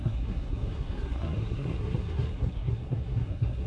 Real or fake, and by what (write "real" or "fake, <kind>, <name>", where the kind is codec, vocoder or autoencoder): fake, codec, SNAC